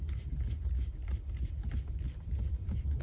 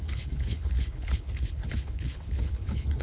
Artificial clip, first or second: second